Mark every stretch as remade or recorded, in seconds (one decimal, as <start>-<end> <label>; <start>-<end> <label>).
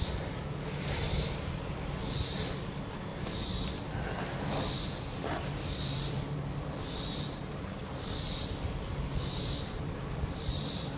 0.0-11.0 remade